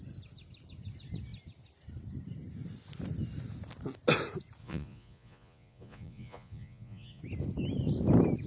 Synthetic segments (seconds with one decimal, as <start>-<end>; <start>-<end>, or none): 4.6-7.2